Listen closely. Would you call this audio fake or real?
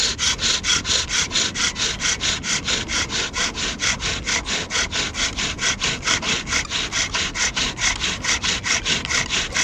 real